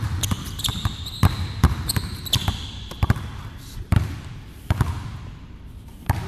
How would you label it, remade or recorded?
remade